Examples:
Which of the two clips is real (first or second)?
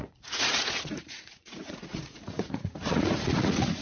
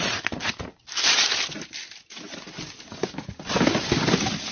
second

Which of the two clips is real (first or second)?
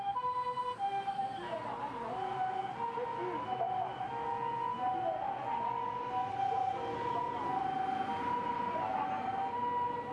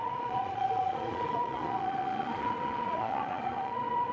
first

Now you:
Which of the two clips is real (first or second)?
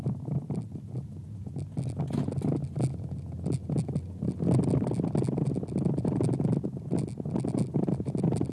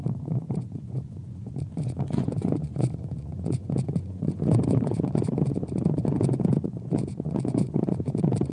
first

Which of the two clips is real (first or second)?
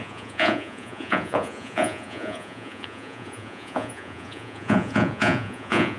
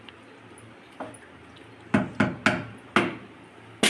second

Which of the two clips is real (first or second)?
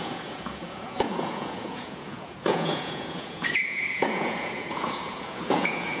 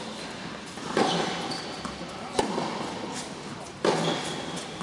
second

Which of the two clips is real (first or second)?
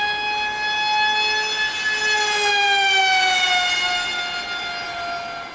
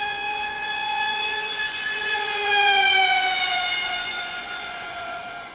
first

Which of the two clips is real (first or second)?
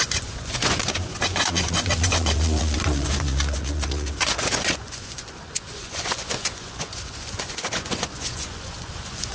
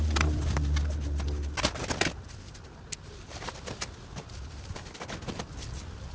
second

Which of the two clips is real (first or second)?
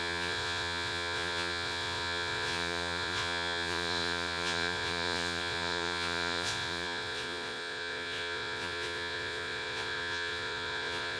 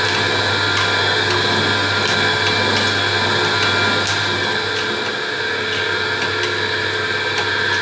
second